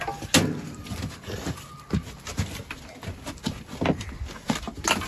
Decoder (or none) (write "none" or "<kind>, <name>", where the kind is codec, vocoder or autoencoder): none